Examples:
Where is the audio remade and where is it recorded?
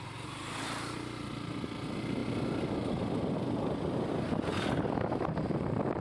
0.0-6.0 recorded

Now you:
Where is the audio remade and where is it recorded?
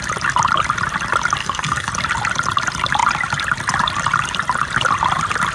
0.0-1.4 recorded; 1.4-1.9 remade; 1.9-5.5 recorded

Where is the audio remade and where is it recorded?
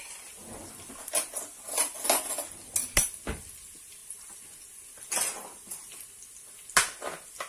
0.0-4.0 recorded; 4.0-4.6 remade; 4.6-7.5 recorded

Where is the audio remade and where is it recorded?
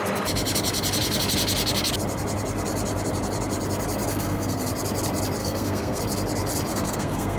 0.0-4.1 recorded; 4.1-4.7 remade; 4.7-5.4 recorded; 5.4-6.0 remade; 6.0-6.7 recorded; 6.7-7.4 remade